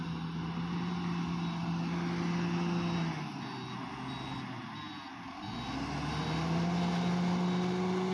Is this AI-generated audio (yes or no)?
no